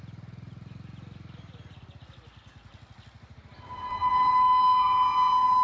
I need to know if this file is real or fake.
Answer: real